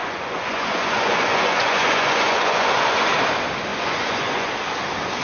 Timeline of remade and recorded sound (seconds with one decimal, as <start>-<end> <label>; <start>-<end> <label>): 0.0-3.1 remade; 3.1-3.7 recorded; 3.7-4.5 remade; 4.5-5.2 recorded